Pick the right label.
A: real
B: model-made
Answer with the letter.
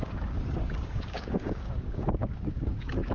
B